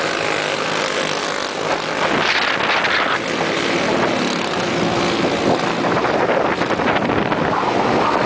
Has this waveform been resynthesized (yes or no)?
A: no